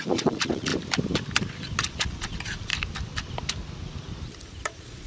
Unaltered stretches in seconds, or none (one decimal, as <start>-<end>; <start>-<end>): 0.7-1.9; 2.7-4.6